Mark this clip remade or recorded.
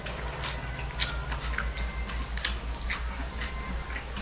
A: recorded